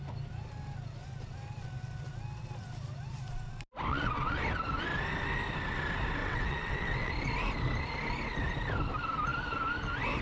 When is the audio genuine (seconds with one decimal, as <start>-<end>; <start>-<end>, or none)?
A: 0.0-3.9; 4.4-6.2; 7.1-10.2